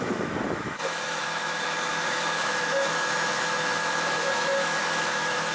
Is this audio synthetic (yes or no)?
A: yes